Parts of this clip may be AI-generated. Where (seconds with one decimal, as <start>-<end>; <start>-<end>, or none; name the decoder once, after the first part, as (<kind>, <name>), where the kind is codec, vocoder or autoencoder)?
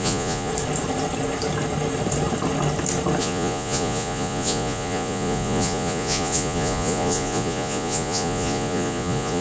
0.0-0.5 (vocoder, Vocos); 3.2-9.4